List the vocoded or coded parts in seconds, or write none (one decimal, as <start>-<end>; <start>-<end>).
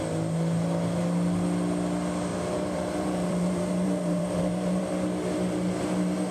2.3-4.8